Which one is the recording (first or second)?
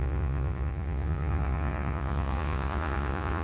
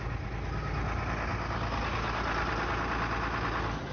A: second